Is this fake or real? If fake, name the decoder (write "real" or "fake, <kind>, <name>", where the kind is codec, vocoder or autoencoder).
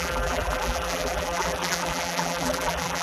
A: fake, vocoder, BigVGAN v2